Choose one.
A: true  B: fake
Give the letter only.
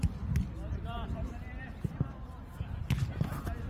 A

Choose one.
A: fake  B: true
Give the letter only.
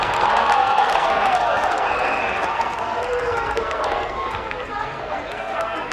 A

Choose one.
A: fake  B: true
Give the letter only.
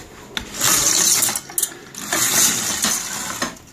B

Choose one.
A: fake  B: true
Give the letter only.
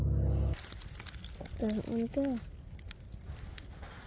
B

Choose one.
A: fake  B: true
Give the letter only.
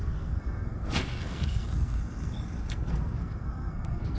A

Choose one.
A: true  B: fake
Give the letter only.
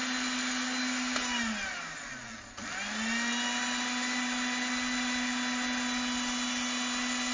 A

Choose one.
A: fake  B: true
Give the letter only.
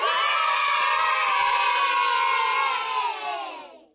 B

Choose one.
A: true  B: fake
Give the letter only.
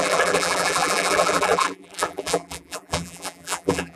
B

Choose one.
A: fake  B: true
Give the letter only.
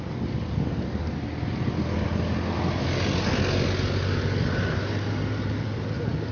B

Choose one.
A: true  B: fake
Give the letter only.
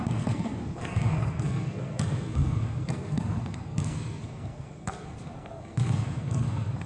B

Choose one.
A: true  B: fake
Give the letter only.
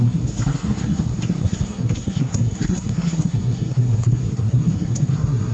B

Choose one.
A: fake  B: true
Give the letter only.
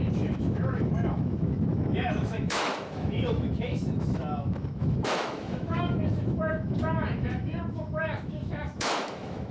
A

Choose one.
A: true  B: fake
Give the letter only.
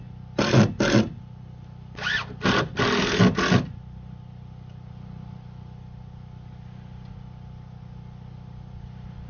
A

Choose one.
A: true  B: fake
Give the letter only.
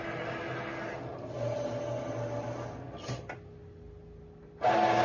A